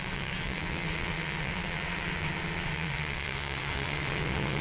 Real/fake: fake